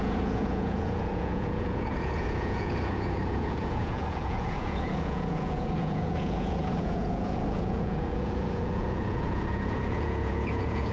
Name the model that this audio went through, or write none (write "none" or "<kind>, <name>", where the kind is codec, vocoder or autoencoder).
vocoder, Vocos